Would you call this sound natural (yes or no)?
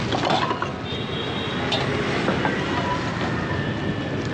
yes